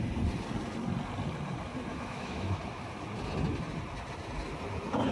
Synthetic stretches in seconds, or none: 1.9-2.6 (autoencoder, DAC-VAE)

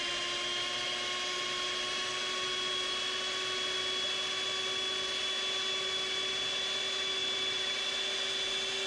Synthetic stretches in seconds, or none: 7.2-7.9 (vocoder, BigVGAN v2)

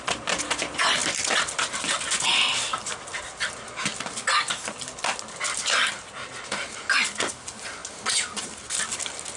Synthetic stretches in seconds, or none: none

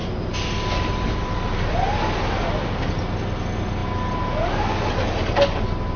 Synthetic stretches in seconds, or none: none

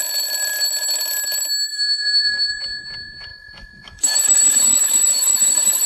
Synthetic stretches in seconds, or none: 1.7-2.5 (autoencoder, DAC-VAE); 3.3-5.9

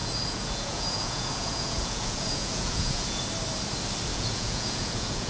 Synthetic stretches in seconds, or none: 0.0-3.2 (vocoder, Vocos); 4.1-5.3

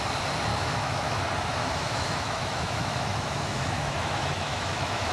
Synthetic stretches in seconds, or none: 0.5-1.2 (autoencoder, DAC-VAE); 1.6-5.1

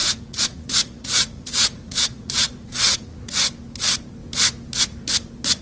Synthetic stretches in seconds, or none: 0.0-3.4 (vocoder, Vocos)